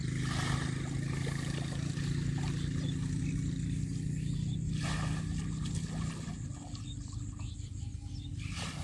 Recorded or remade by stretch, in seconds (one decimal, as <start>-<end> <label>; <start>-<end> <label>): 0.0-8.8 recorded